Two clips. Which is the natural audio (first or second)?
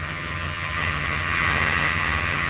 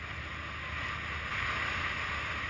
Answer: second